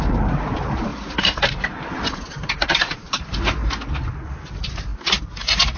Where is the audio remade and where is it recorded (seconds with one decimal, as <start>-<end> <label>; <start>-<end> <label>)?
0.0-3.6 remade; 3.6-4.4 recorded; 4.4-4.9 remade; 4.9-5.8 recorded